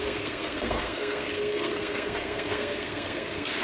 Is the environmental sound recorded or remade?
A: remade